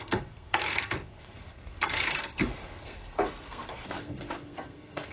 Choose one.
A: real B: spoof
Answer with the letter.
B